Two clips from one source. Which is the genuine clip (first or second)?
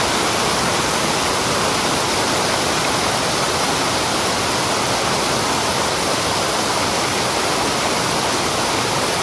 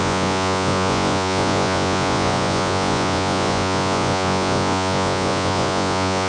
first